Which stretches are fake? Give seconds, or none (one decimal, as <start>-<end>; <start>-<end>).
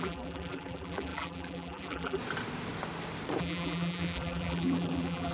0.0-2.2; 3.4-5.3